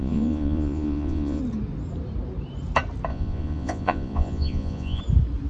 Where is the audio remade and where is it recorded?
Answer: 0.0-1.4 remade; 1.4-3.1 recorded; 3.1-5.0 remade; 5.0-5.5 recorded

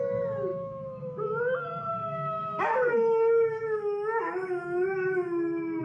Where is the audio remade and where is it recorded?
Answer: 0.0-0.5 recorded; 0.5-1.4 remade; 1.4-1.9 recorded; 1.9-5.8 remade